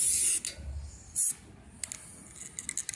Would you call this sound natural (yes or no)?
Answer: yes